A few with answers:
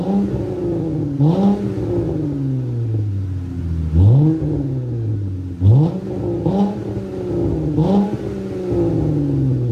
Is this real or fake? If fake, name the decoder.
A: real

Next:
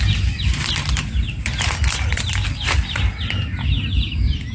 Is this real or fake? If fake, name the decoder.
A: real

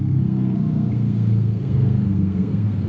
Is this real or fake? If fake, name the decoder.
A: fake, codec, SNAC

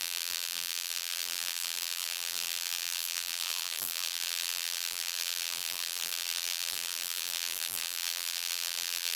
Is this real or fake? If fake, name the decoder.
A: fake, vocoder, BigVGAN v2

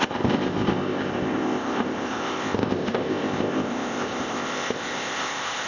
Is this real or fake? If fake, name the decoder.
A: fake, codec, ZipCodec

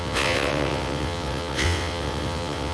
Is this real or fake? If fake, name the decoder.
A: fake, vocoder, WaveNeXt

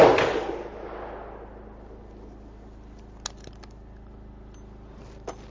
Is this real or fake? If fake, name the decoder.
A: real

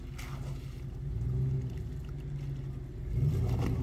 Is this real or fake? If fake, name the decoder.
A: real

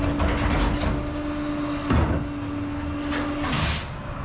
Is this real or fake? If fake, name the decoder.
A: real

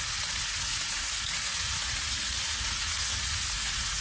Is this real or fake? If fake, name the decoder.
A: fake, vocoder, Vocos